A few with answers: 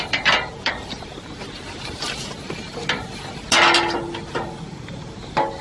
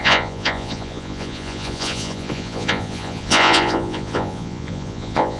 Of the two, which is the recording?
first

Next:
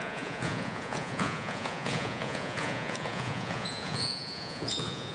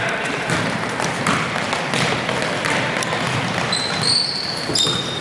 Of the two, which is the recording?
second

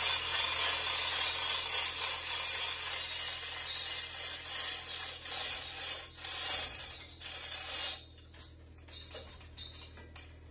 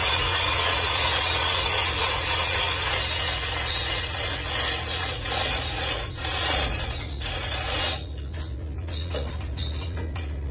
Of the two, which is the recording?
first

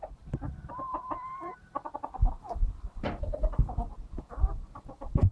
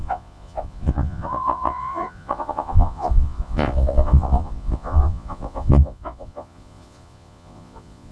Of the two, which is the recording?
first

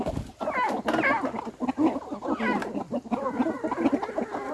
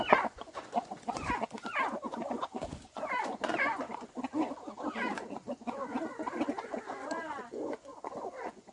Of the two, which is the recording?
first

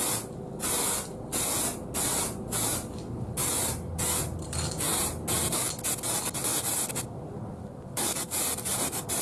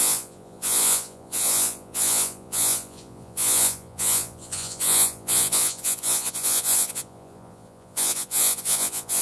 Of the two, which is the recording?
first